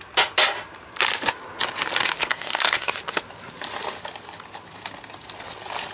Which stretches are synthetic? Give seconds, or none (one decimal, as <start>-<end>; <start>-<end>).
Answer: 2.2-2.9